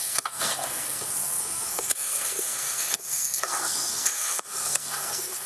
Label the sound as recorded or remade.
remade